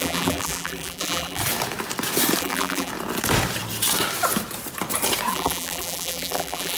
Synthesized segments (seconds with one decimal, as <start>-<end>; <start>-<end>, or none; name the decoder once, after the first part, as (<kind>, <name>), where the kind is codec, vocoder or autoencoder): 0.0-1.4 (vocoder, BigVGAN v2); 2.4-2.9; 5.3-6.8